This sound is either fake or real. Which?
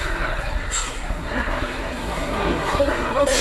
fake